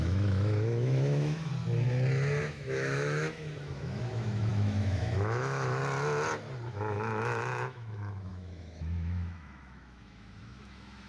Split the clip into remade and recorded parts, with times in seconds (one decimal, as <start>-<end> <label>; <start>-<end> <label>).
0.0-1.5 remade; 1.5-2.4 recorded; 2.4-5.8 remade; 5.8-6.7 recorded; 6.7-11.1 remade